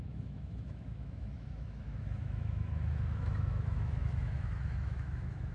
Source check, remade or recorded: remade